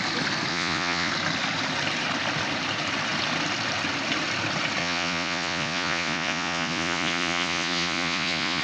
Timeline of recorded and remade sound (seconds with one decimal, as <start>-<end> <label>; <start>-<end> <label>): 0.0-0.5 recorded; 0.5-1.1 remade; 1.1-4.8 recorded; 4.8-8.6 remade